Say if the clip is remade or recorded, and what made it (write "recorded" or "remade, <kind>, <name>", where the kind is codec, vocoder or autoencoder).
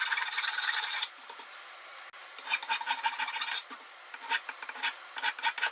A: recorded